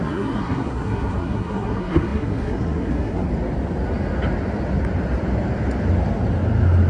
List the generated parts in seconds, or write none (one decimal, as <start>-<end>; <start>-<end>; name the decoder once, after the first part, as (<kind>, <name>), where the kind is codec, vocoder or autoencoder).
0.0-3.3 (codec, SNAC)